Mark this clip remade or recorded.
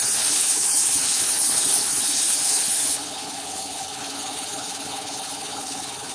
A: remade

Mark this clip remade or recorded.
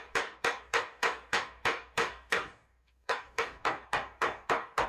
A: remade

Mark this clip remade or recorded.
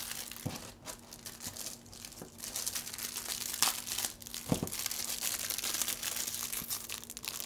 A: recorded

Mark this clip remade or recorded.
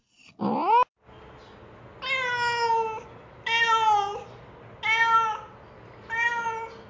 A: recorded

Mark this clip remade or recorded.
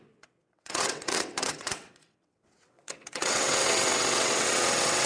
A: remade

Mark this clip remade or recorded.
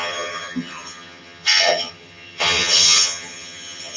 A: remade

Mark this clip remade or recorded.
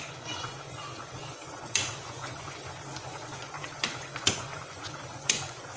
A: remade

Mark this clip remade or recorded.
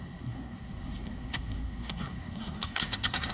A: remade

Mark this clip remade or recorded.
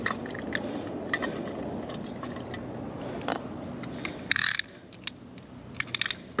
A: recorded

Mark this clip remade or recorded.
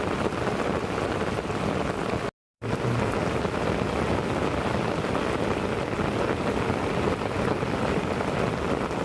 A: recorded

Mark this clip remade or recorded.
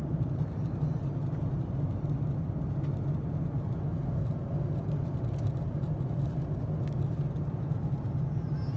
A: recorded